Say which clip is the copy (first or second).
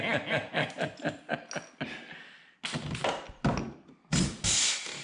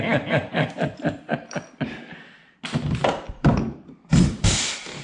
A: second